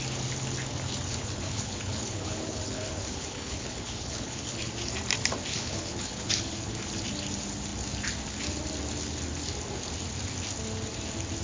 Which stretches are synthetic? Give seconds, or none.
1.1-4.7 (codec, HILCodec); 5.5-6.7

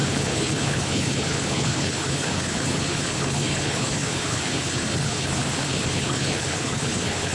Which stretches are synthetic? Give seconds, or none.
0.0-7.3 (codec, HILCodec)

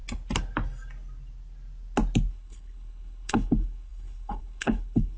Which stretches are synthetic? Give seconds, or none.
2.3-5.2 (codec, HILCodec)

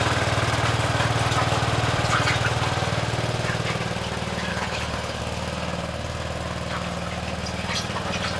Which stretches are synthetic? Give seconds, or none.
4.5-5.2 (codec, HILCodec)

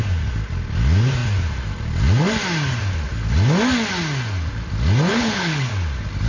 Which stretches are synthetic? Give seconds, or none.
5.1-5.7 (codec, HILCodec)

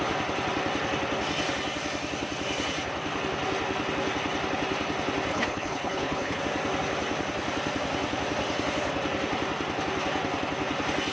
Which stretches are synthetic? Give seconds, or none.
5.3-6.4 (codec, HILCodec)